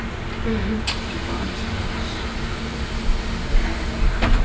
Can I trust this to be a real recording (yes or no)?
yes